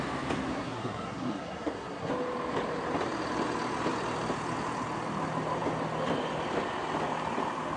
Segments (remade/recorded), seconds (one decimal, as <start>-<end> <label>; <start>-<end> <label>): 0.0-0.5 recorded; 0.5-2.1 remade; 2.1-7.8 recorded